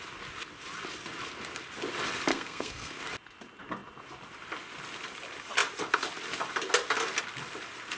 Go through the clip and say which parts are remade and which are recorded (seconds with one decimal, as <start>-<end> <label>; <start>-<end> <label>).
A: 0.0-2.3 recorded; 2.3-3.0 remade; 3.0-8.0 recorded